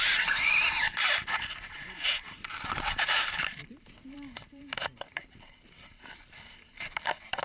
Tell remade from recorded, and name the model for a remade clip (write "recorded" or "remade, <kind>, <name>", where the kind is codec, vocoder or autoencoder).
remade, vocoder, BigVGAN v2